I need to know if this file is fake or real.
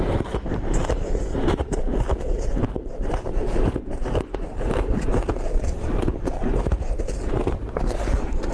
fake